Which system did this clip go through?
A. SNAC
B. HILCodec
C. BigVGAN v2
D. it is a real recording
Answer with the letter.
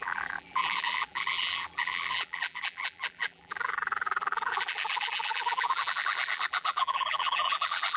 C